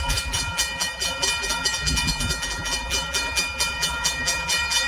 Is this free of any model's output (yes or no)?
no